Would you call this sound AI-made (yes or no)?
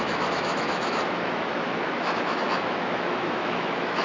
yes